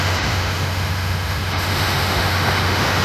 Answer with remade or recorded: remade